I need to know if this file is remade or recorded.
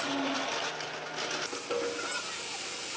recorded